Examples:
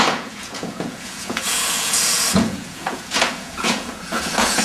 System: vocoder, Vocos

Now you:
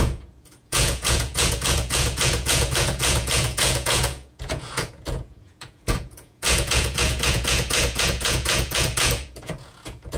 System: vocoder, Vocos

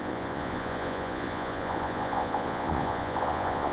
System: vocoder, Vocos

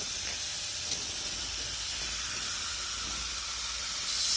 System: none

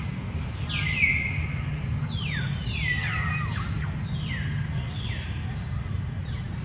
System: none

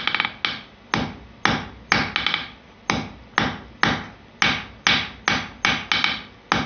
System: none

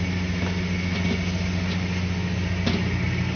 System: none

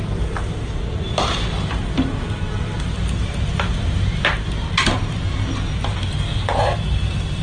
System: none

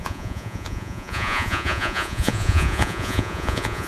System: vocoder, Vocos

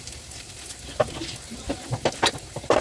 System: none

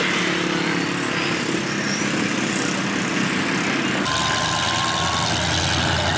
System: none